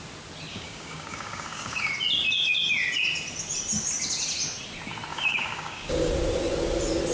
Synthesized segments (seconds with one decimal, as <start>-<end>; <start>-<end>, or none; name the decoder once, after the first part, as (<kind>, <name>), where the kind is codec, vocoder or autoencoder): 0.5-1.9 (codec, DAC); 5.1-6.1